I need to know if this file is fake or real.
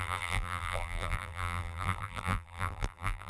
fake